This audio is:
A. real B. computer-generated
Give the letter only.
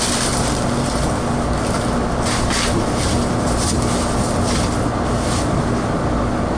A